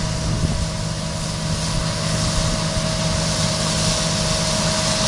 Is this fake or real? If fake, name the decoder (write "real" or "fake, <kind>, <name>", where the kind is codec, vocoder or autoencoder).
real